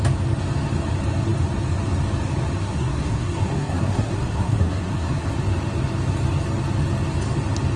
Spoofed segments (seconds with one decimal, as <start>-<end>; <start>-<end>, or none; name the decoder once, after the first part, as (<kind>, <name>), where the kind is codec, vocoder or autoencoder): 2.6-5.2 (codec, SNAC)